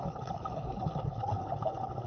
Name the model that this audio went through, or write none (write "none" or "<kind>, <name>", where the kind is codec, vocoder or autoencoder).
codec, HILCodec